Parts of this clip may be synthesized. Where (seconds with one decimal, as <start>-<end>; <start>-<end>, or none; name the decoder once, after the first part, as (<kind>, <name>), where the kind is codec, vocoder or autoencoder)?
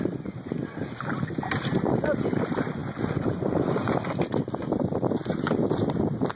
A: none